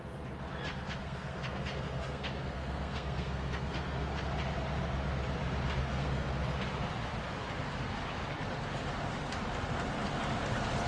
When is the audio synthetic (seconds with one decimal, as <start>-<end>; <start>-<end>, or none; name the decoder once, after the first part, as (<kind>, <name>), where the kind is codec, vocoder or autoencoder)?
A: 1.0-4.1 (codec, SNAC); 5.8-6.3